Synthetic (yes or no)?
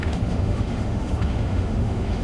yes